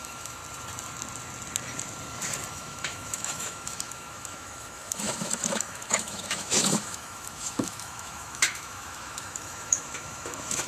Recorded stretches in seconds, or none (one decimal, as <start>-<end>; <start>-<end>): 0.4-2.5